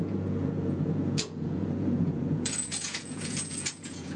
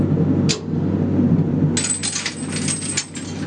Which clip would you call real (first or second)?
second